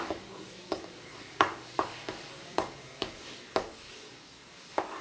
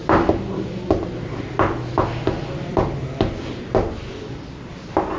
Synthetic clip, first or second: first